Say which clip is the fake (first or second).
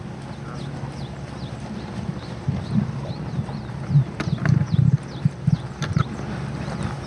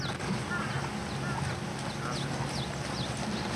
first